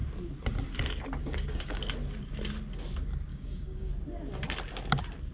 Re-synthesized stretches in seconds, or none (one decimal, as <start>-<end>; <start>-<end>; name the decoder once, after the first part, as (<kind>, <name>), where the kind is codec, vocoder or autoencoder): 1.2-1.8 (codec, DAC); 3.3-3.9